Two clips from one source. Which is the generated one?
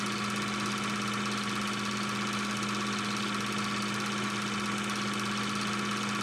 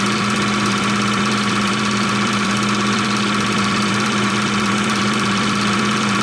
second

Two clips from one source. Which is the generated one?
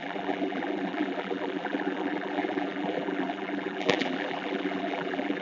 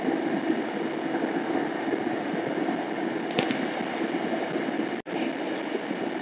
first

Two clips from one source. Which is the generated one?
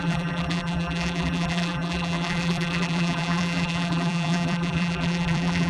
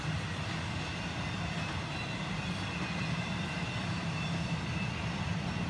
first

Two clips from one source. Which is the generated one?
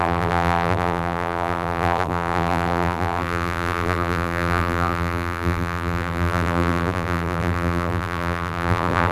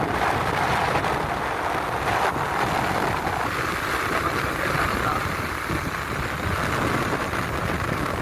first